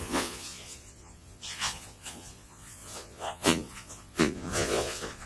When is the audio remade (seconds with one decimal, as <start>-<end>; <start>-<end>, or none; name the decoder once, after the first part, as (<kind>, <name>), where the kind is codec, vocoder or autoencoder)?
0.0-5.3 (vocoder, Vocos)